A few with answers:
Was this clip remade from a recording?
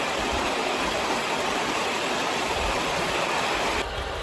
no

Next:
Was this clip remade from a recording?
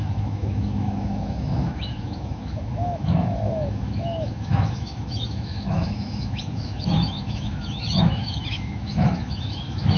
yes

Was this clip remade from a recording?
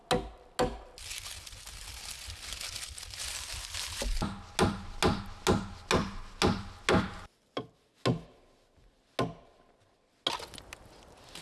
no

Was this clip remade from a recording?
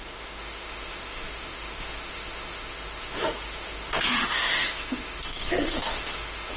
yes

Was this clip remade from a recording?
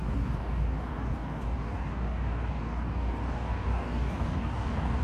yes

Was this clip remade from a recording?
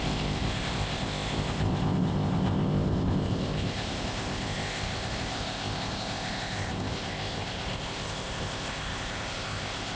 yes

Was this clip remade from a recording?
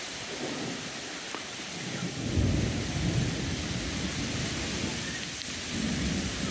no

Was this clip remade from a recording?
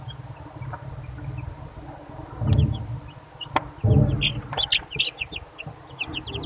no